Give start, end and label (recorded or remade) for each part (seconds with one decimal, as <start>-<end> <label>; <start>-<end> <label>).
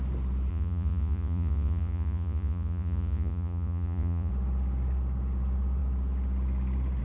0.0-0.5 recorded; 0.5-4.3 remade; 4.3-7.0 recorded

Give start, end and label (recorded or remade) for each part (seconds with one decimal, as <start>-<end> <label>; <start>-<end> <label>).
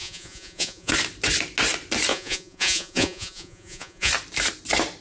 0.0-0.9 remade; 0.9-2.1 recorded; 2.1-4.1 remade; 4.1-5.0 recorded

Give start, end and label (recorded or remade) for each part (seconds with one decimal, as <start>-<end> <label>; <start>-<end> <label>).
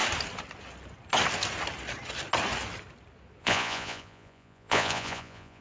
0.0-3.4 recorded; 3.4-5.6 remade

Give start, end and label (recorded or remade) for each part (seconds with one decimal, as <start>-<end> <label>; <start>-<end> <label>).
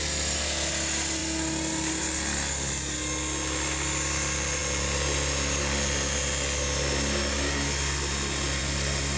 0.0-9.2 recorded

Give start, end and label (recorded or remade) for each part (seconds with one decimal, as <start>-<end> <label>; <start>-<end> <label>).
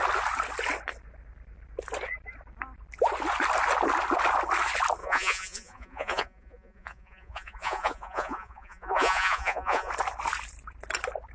0.0-5.0 recorded; 5.0-9.9 remade; 9.9-11.3 recorded